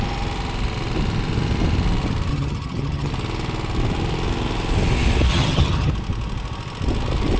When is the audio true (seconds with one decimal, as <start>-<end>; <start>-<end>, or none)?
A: 0.0-2.3; 3.1-5.3; 5.9-7.4